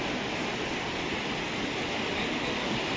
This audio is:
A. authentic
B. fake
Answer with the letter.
A